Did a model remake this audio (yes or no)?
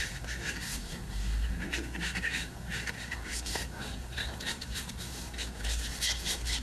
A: yes